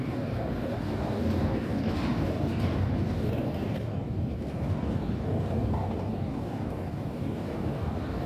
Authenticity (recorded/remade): remade